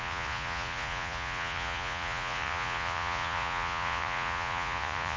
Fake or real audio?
fake